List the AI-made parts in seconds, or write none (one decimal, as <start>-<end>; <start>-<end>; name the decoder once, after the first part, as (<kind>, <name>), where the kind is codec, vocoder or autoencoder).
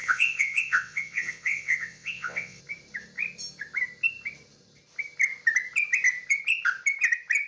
0.0-2.6 (vocoder, WaveNeXt)